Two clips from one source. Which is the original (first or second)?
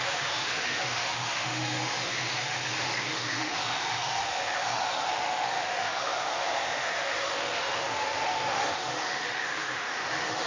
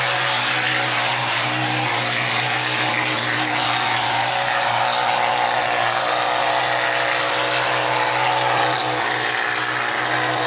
second